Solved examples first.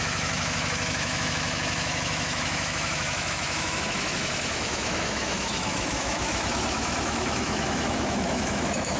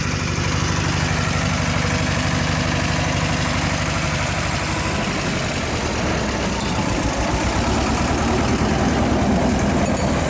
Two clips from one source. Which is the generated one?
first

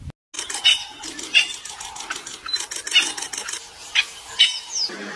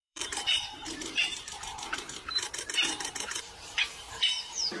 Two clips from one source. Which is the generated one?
second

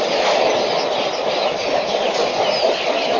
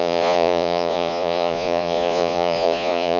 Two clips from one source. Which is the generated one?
second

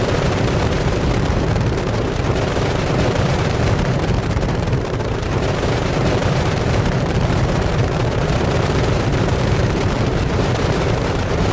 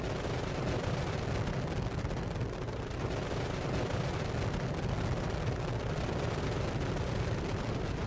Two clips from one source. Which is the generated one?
first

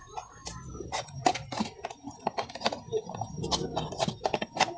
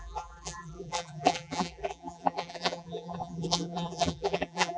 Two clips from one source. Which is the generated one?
second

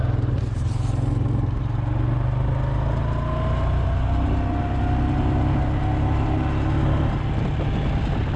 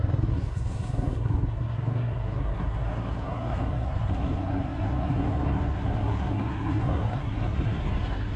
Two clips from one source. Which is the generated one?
second